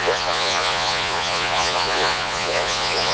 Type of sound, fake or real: fake